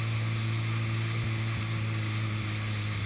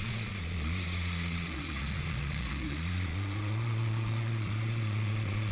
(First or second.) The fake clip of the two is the second